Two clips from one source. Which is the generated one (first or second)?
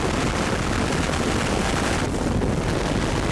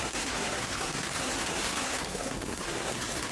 second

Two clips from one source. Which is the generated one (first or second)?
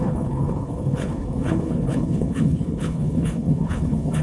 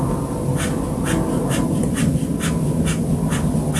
first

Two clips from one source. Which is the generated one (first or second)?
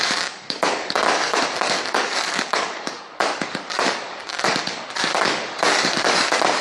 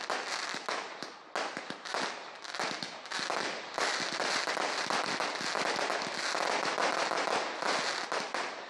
first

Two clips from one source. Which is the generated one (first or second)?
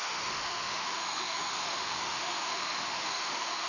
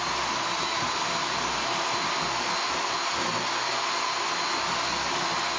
first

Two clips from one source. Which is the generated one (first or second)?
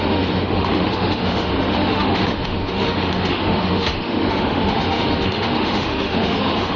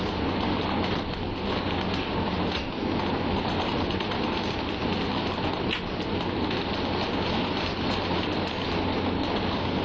first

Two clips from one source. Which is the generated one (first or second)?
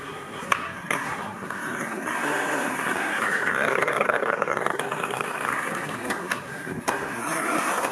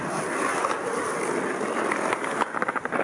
first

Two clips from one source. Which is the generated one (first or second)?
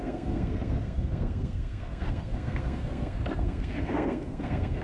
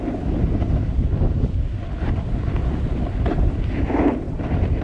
first